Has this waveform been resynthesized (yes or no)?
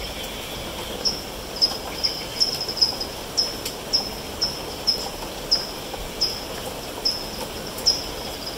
no